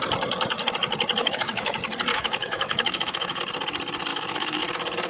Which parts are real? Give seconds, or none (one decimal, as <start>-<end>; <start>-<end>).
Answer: 0.0-1.2; 1.7-2.1; 3.4-4.1; 4.6-5.1